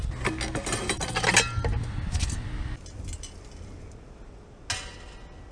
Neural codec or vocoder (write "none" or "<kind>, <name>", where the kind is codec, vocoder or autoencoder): none